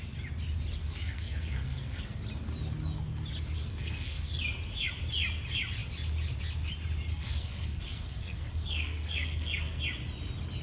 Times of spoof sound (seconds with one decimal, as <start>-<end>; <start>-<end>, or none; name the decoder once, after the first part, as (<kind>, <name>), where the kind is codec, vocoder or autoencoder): 0.8-2.2 (codec, SNAC); 3.6-4.4; 7.1-9.8